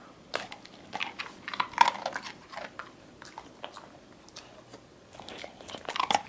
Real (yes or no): yes